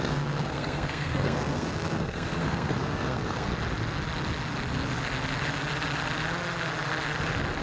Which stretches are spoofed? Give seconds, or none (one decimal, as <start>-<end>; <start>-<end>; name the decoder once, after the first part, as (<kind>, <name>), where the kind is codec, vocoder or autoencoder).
0.0-3.5 (codec, SNAC)